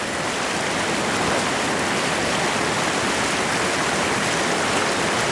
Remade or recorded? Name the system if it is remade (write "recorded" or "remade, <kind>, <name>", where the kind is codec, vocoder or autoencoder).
recorded